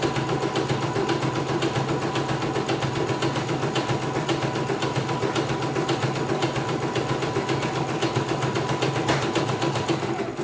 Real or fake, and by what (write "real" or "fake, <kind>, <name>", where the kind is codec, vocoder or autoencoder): real